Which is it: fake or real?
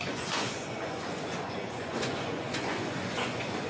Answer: fake